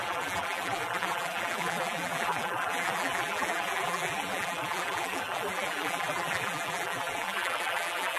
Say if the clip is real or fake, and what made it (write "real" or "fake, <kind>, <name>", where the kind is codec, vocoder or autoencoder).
fake, vocoder, BigVGAN v2